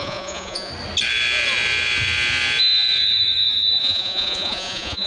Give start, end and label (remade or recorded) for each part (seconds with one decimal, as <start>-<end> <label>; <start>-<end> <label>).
0.0-0.7 remade; 0.7-3.8 recorded; 3.8-5.1 remade